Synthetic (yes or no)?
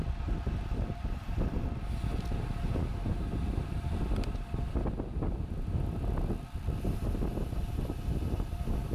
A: no